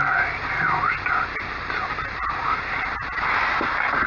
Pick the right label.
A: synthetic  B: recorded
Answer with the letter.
B